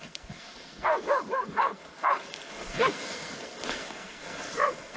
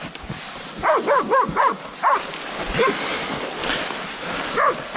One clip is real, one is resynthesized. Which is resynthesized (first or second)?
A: first